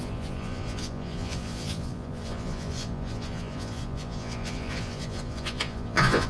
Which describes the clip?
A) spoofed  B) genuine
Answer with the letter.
A